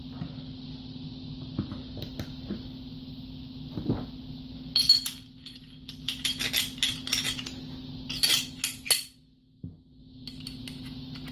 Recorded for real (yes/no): yes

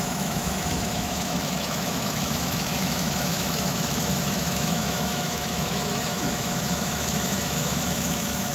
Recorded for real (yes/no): no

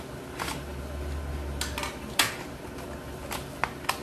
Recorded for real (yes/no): yes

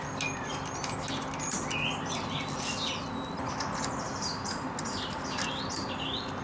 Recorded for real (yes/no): yes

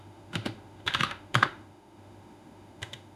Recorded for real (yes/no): no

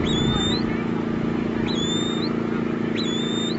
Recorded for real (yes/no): yes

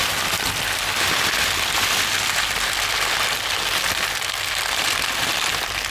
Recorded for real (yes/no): yes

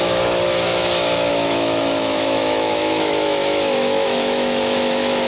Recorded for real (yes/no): no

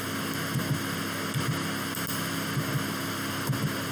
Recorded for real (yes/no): yes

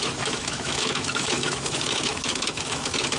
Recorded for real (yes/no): no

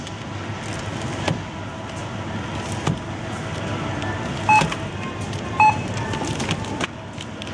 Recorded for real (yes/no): yes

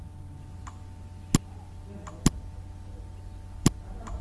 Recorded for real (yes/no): yes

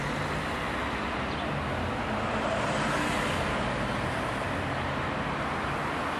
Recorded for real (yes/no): yes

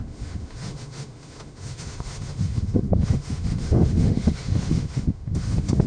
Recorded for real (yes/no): no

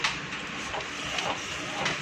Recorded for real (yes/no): yes